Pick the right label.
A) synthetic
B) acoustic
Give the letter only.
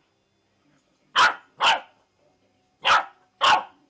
B